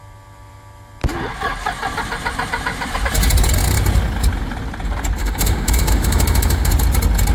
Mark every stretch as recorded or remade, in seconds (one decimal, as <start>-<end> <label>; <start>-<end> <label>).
0.0-5.2 recorded; 5.2-6.7 remade; 6.7-7.3 recorded